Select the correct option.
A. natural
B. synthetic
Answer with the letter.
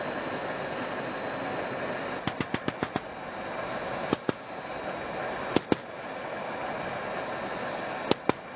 A